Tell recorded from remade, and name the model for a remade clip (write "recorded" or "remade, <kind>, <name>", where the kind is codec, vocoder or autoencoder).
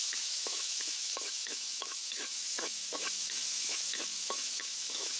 remade, autoencoder, DAC-VAE